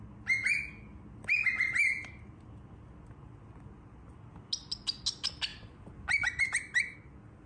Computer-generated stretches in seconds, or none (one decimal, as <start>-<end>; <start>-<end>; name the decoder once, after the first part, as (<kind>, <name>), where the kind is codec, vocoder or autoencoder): none